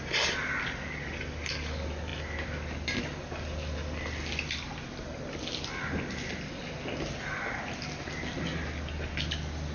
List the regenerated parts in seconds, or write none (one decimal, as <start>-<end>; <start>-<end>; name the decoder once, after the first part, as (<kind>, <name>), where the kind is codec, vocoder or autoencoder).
none